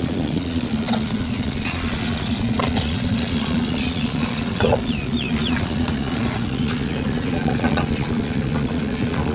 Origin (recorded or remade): remade